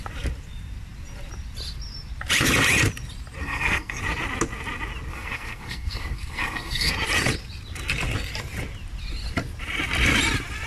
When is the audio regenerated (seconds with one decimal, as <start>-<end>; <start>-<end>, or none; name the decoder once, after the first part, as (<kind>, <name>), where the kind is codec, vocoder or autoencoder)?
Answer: 3.4-4.0 (codec, SNAC); 5.1-6.9